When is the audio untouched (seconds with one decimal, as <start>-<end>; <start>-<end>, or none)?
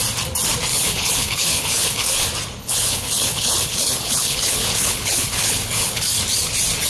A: 0.0-0.7; 2.1-2.6; 6.1-6.9